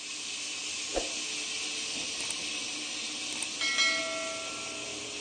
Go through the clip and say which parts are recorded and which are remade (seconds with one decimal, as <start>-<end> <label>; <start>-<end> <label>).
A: 0.0-5.2 recorded